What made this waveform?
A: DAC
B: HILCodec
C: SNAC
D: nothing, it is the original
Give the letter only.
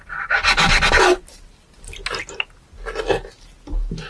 D